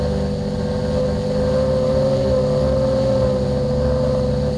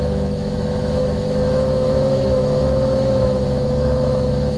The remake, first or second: second